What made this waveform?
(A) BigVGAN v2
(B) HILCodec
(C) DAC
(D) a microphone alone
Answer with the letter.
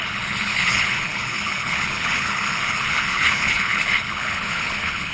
B